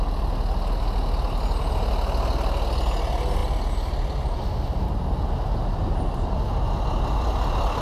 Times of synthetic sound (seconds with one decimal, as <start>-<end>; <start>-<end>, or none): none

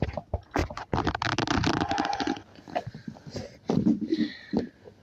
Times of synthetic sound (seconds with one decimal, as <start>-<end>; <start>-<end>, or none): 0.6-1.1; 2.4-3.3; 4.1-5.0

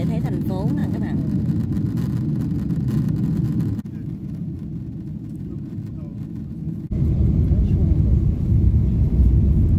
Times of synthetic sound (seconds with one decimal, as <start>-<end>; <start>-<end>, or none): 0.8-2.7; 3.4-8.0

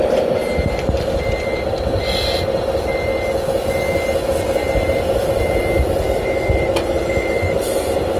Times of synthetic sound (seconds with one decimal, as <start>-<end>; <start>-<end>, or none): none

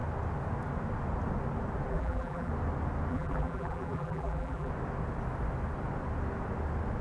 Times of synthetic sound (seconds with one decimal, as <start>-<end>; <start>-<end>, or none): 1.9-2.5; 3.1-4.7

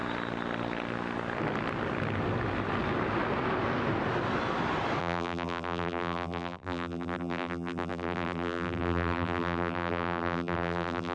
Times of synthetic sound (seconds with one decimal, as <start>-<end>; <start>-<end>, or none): 5.0-11.1